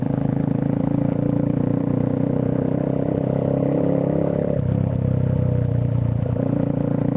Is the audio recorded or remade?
remade